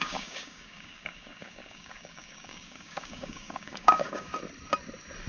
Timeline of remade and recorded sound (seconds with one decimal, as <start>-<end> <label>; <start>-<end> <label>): 0.0-4.3 remade; 4.3-5.3 recorded